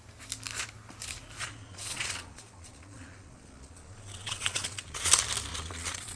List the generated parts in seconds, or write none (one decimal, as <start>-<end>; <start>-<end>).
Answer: 1.4-5.1; 5.5-6.2